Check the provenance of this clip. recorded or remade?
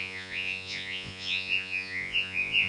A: remade